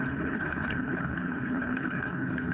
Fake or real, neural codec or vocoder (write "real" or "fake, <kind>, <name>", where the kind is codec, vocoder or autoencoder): fake, codec, HILCodec